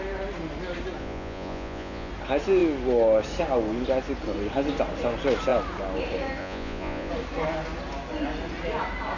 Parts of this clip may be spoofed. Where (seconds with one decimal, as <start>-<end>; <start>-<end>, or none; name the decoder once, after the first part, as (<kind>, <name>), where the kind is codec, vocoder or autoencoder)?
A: 1.0-2.1 (vocoder, Vocos); 6.4-7.1